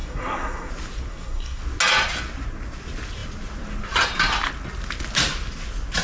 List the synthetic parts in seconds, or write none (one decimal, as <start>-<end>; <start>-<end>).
0.0-0.7; 1.1-1.6